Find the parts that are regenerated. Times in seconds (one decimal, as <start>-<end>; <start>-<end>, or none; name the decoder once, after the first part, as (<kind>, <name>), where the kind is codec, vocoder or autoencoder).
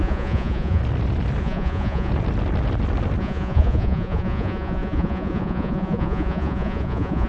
0.0-0.8 (vocoder, Vocos); 1.4-2.1; 3.2-7.3